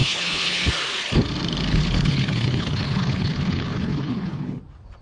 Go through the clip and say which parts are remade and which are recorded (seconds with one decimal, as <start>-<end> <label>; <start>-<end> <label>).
0.0-0.7 remade; 0.7-1.7 recorded; 1.7-4.6 remade; 4.6-5.0 recorded